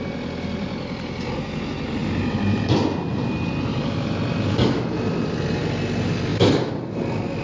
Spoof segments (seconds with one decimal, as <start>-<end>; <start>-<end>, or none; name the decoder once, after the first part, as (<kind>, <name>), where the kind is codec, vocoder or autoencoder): none